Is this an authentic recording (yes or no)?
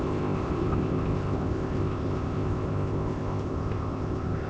no